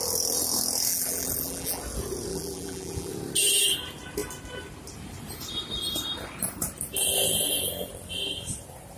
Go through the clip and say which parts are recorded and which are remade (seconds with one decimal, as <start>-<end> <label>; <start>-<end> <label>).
0.0-0.9 recorded; 0.9-1.8 remade; 1.8-2.3 recorded; 2.3-3.1 remade; 3.1-9.0 recorded